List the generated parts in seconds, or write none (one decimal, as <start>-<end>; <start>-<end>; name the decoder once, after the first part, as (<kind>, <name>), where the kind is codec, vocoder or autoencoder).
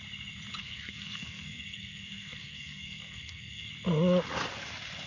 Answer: 0.6-3.7 (codec, SNAC)